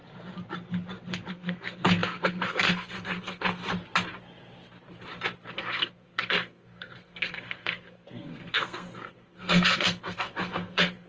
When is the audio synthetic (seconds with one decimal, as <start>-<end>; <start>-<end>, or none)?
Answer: 1.3-3.6; 5.5-11.1